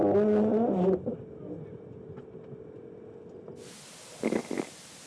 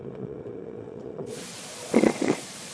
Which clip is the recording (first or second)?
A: first